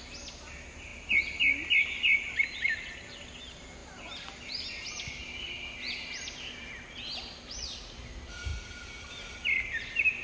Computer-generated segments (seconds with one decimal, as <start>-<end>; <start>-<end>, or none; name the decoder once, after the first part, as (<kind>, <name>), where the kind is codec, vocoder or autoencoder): none